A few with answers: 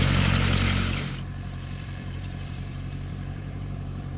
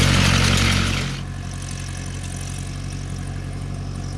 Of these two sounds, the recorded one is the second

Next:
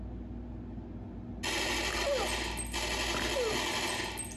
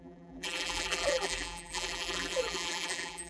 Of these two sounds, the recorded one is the first